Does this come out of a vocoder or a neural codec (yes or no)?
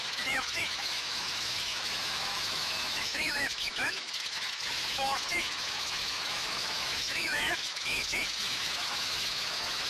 yes